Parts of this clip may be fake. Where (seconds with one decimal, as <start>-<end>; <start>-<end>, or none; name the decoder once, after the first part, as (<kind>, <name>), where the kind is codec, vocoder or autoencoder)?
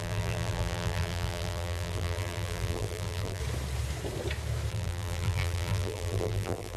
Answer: 0.0-3.4 (vocoder, BigVGAN v2); 4.7-6.8